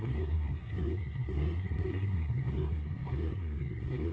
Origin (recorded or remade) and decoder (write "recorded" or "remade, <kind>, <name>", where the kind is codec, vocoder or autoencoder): remade, codec, SNAC